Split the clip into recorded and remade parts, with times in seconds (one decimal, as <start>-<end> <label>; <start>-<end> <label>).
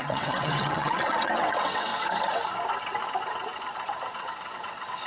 0.0-1.9 remade; 1.9-4.5 recorded; 4.5-5.1 remade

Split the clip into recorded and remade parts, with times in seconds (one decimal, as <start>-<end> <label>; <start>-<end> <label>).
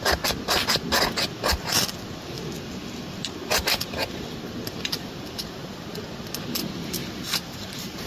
0.0-7.0 recorded; 7.0-8.1 remade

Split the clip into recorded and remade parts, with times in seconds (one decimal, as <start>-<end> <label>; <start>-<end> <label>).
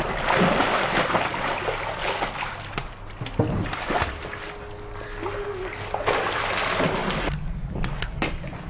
0.0-8.7 recorded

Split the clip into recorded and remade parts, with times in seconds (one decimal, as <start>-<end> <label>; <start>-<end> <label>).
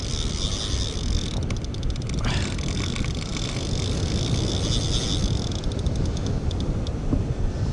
0.0-7.7 recorded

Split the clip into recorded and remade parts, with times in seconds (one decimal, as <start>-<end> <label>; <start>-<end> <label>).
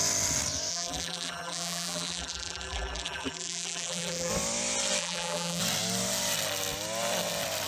0.0-0.7 recorded; 0.7-4.3 remade; 4.3-5.0 recorded; 5.0-5.6 remade; 5.6-7.7 recorded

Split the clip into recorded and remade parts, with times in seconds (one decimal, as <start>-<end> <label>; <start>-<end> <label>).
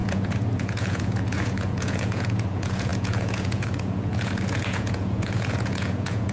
0.0-6.3 remade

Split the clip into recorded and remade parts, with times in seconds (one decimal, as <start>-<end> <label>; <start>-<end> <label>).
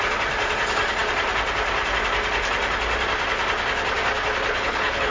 0.0-4.5 recorded; 4.5-5.1 remade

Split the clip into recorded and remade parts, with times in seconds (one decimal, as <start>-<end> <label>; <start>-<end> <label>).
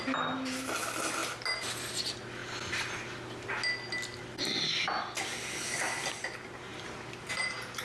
0.0-7.8 recorded